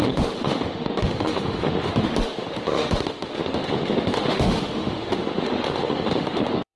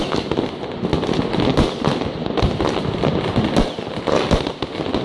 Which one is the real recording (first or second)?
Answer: second